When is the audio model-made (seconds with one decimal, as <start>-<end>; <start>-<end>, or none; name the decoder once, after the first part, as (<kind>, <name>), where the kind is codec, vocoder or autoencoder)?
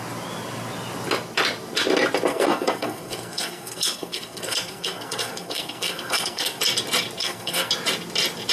2.3-6.6 (codec, SNAC); 7.2-7.7